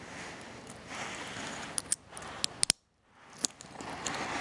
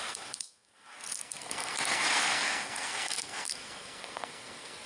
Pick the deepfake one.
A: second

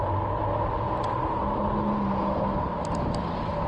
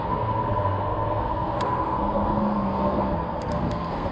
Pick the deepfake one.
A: second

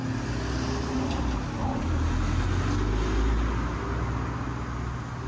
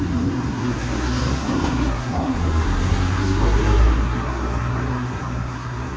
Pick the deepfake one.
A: second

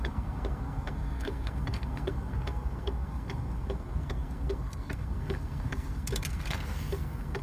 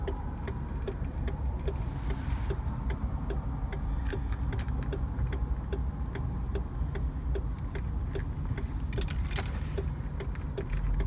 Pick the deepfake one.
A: first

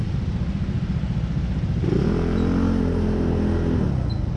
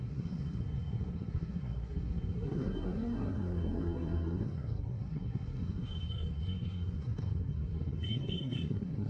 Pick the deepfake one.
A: second